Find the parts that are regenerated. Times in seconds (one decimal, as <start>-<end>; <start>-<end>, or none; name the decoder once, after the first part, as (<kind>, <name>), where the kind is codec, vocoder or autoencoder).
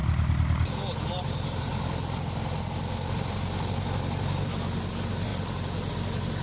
none